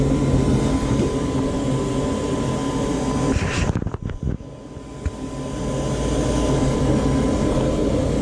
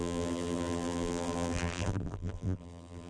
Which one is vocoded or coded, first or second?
second